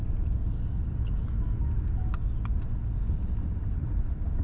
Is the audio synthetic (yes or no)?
no